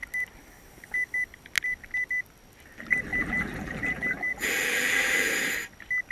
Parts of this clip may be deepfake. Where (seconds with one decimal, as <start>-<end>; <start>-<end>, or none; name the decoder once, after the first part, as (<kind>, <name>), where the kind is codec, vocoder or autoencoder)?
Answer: 3.1-5.3 (vocoder, BigVGAN v2)